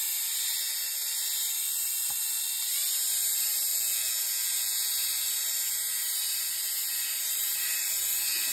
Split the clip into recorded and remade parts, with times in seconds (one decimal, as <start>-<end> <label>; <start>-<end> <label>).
0.0-3.7 recorded; 3.7-4.9 remade; 4.9-8.5 recorded